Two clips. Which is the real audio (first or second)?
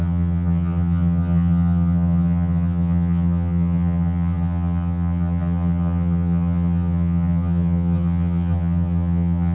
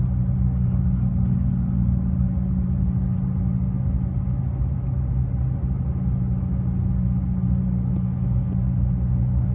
second